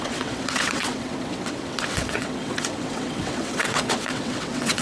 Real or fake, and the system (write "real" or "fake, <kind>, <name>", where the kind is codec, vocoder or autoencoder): fake, vocoder, WaveNeXt